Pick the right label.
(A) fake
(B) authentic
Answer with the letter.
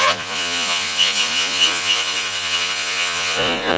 A